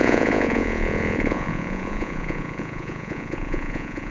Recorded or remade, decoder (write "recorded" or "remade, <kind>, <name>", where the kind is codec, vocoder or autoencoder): remade, vocoder, Vocos